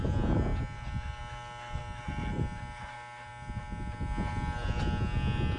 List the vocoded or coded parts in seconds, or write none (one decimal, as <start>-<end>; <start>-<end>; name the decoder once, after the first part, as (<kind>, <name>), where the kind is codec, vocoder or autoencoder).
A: none